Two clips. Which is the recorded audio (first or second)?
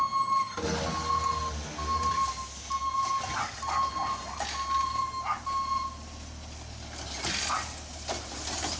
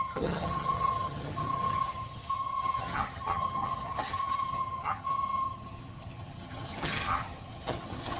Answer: first